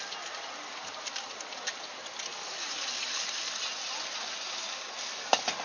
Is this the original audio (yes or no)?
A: yes